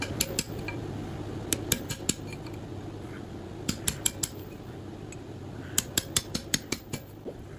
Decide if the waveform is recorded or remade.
recorded